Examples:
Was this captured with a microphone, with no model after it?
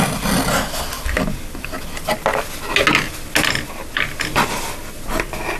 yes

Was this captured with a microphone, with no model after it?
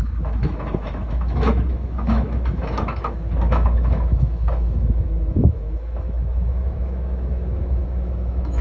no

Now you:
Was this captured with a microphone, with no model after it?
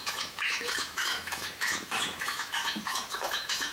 no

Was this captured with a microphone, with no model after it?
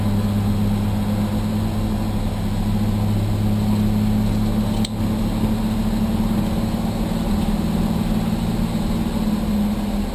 yes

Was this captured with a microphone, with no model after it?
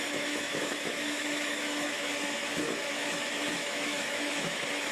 no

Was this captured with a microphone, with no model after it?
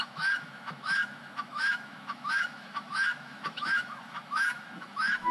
no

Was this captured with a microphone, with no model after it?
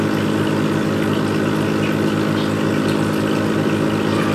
yes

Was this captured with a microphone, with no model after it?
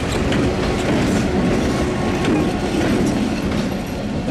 yes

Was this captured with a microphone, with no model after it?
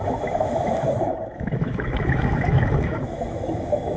no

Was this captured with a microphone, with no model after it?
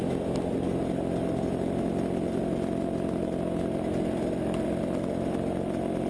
yes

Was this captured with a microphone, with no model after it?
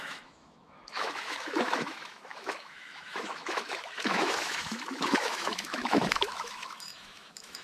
no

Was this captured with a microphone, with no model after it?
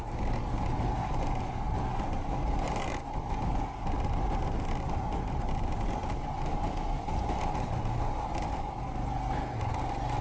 yes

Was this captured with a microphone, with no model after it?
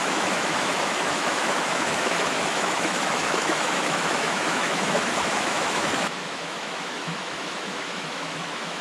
no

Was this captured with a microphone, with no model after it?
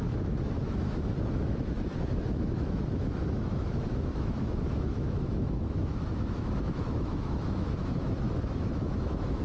no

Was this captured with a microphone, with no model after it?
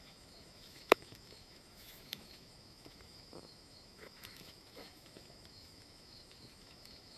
no